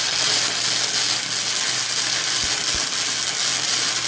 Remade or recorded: recorded